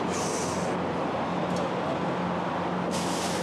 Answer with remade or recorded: recorded